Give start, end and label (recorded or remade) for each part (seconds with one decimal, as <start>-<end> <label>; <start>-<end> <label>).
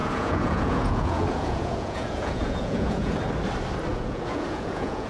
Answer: 0.0-3.1 remade; 3.1-3.9 recorded; 3.9-5.1 remade